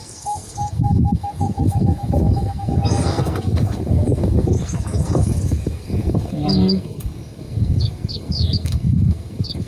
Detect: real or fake fake